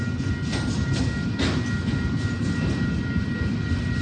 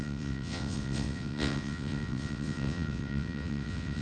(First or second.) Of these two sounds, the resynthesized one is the second